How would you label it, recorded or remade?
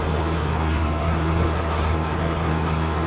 remade